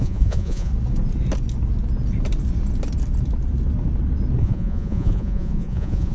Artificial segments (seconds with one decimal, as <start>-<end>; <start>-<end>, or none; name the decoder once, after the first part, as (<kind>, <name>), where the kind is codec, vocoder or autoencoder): 0.0-0.7 (vocoder, Vocos); 4.4-6.1